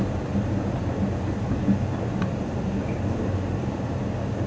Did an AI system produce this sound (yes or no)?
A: no